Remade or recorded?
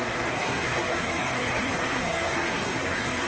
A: remade